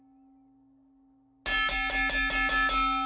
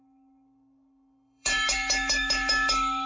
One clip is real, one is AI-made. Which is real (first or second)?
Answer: first